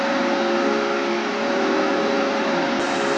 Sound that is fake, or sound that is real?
real